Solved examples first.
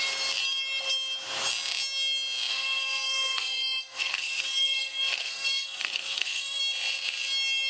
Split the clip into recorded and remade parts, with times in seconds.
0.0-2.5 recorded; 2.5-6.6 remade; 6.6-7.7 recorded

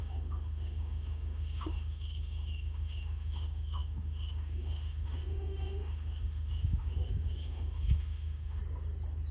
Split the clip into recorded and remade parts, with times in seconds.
0.0-8.6 remade; 8.6-9.3 recorded

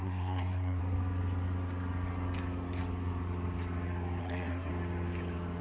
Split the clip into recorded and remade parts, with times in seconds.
0.0-0.8 remade; 0.8-4.2 recorded; 4.2-4.7 remade; 4.7-5.6 recorded

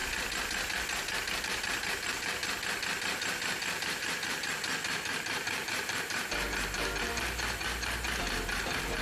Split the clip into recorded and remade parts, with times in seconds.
0.0-1.4 recorded; 1.4-2.4 remade; 2.4-3.0 recorded; 3.0-9.0 remade